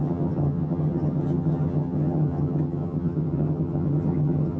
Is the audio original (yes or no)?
no